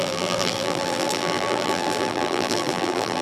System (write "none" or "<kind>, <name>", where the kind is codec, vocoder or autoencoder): vocoder, BigVGAN v2